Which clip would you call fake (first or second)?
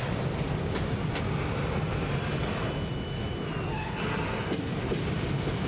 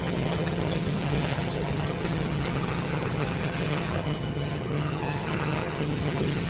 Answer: second